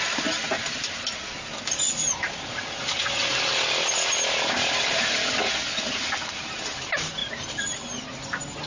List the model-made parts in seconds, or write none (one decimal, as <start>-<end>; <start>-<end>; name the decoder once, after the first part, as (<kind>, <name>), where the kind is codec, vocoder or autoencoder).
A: 3.5-5.1 (vocoder, BigVGAN v2); 7.2-7.9